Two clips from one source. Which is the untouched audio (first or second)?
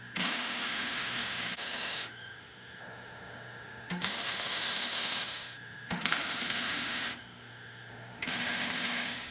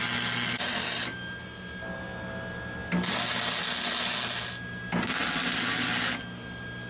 second